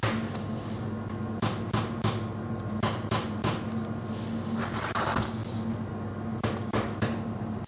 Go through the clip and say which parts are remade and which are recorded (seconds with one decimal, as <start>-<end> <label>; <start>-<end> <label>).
0.0-7.7 recorded